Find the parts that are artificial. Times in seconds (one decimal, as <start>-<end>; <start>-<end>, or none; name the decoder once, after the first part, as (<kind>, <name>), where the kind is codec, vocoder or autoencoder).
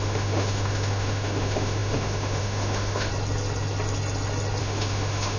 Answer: 0.0-3.1 (autoencoder, DAC-VAE); 4.6-5.4